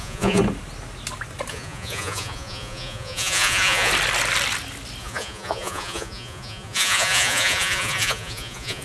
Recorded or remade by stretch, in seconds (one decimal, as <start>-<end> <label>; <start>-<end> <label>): 0.0-0.4 remade; 0.4-1.5 recorded; 1.5-3.9 remade; 3.9-5.0 recorded; 5.0-8.8 remade